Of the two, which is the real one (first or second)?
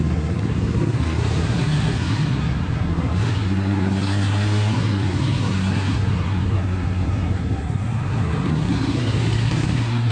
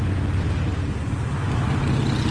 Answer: second